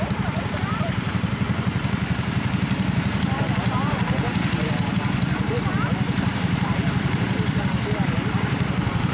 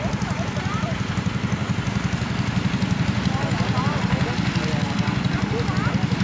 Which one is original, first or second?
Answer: second